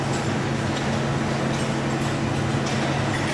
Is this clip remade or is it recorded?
recorded